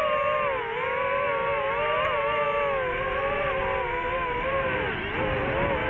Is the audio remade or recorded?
recorded